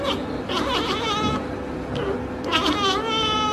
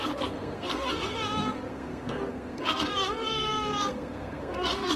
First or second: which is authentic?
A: first